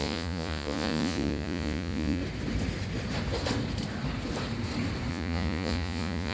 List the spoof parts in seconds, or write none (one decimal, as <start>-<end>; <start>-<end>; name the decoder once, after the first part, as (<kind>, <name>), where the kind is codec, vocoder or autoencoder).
0.0-2.2 (vocoder, Vocos); 5.1-6.3

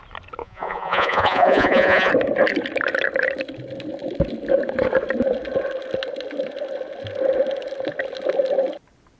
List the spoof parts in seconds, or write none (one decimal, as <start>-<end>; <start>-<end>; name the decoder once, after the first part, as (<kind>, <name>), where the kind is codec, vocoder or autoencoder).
0.4-2.1 (vocoder, Vocos)

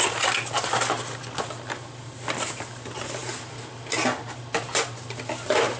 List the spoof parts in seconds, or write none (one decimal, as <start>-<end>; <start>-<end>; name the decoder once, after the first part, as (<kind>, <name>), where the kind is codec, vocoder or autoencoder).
none

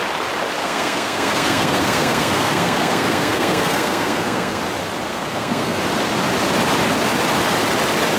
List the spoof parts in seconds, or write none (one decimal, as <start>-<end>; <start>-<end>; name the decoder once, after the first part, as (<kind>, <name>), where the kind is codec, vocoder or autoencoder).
0.6-4.6 (codec, SNAC); 5.1-5.8

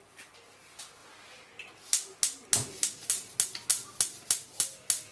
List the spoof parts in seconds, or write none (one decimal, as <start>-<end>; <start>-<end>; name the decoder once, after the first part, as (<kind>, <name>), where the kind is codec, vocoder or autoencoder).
none

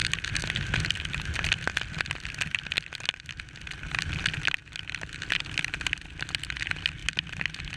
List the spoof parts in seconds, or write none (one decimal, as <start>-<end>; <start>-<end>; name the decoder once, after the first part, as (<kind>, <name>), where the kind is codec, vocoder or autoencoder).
none

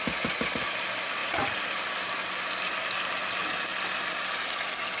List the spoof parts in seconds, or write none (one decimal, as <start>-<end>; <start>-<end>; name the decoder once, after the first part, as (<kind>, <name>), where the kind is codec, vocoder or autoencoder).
none

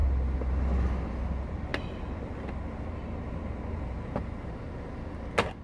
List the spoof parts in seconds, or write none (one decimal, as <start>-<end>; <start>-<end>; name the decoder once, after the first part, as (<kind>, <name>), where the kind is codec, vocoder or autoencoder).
none